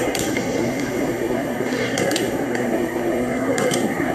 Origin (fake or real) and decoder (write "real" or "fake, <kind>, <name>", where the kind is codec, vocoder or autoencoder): fake, codec, SNAC